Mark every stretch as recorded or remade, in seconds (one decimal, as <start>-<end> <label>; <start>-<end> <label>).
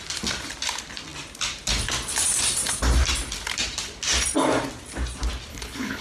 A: 0.0-5.5 recorded; 5.5-6.0 remade